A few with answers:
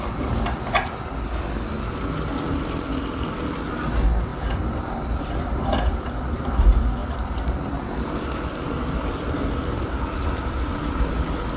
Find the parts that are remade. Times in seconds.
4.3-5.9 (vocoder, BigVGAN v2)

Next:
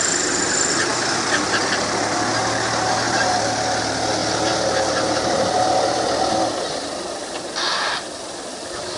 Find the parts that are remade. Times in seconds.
0.9-1.6 (vocoder, BigVGAN v2)

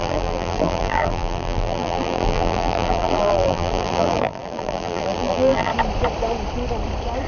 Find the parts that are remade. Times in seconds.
0.0-5.7 (vocoder, BigVGAN v2)

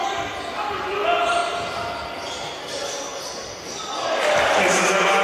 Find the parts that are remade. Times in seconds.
3.1-4.8 (vocoder, BigVGAN v2)

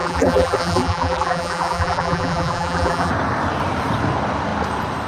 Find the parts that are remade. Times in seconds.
0.0-3.1 (vocoder, BigVGAN v2)

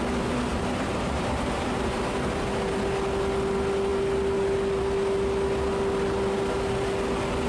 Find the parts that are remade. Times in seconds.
0.5-2.0 (vocoder, BigVGAN v2)

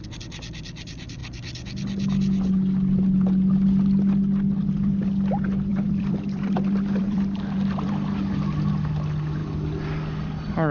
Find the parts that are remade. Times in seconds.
5.7-7.9 (vocoder, BigVGAN v2)